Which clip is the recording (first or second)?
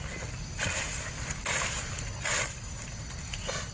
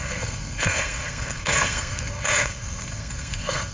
first